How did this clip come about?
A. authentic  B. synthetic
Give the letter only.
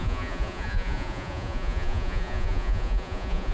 B